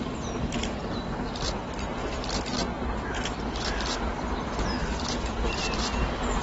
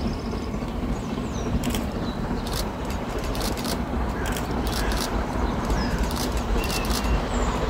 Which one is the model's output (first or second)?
second